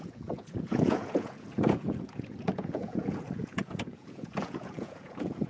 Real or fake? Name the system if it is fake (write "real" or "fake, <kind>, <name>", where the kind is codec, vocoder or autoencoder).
fake, vocoder, Vocos